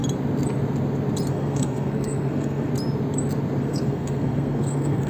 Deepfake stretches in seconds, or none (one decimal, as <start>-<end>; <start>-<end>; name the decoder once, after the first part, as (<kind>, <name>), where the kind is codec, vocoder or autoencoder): 1.3-2.7 (codec, SNAC); 3.6-5.1